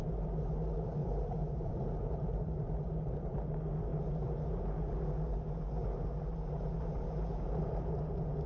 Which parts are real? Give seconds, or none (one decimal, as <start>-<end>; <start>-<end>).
0.0-1.0; 3.5-8.5